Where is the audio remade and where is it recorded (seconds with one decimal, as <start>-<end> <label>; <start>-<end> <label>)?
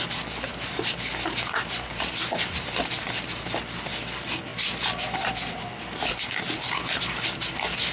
0.0-0.5 recorded; 0.5-3.9 remade; 3.9-4.5 recorded; 4.5-7.0 remade; 7.0-7.9 recorded